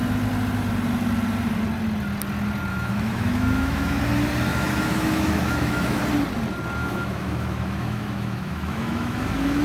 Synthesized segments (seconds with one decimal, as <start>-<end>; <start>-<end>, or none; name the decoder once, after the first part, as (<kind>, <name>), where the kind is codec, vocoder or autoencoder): 2.7-4.0 (autoencoder, DAC-VAE); 4.5-6.0; 6.8-9.6